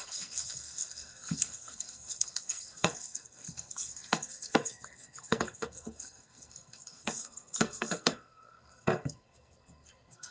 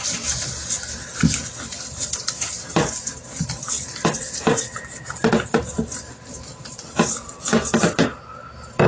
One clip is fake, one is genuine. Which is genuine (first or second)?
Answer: second